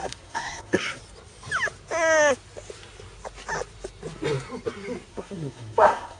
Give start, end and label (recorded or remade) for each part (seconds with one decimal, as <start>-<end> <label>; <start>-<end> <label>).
0.0-1.0 remade; 1.0-5.1 recorded; 5.1-6.2 remade